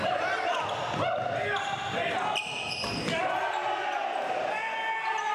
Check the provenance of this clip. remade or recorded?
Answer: recorded